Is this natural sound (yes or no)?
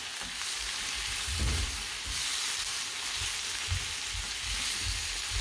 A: yes